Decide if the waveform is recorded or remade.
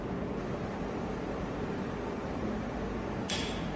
recorded